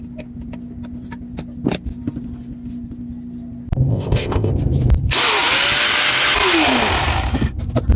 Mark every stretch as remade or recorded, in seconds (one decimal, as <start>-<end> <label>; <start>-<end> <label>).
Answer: 0.0-3.9 recorded; 3.9-4.5 remade; 4.5-8.0 recorded